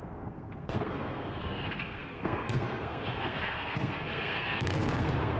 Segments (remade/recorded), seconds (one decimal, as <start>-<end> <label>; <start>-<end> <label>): 0.0-5.4 remade